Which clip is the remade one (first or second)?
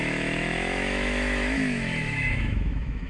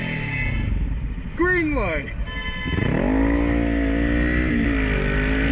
first